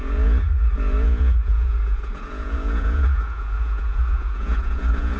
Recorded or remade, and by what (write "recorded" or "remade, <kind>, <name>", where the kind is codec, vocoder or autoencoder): remade, vocoder, Vocos